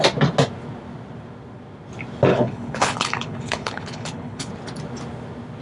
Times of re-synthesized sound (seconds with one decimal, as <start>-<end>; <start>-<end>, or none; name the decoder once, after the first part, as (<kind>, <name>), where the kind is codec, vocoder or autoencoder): 2.3-4.5 (codec, HILCodec)